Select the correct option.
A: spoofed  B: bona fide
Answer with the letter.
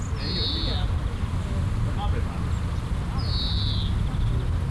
B